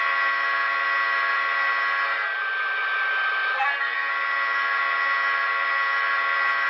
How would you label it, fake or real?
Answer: real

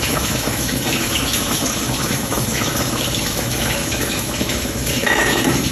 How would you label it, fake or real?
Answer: fake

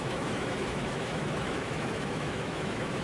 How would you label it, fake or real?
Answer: fake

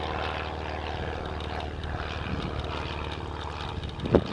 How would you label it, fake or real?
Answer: real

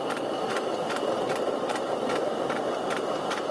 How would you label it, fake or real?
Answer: real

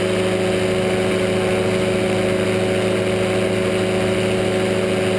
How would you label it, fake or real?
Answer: real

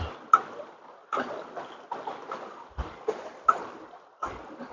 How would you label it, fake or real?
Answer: real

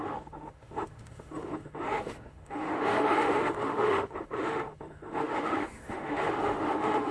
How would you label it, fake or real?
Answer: fake